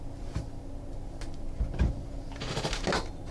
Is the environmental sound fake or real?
real